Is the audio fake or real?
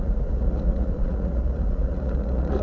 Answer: fake